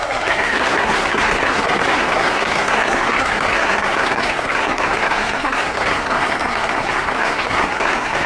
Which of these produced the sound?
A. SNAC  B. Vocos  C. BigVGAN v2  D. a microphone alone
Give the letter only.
A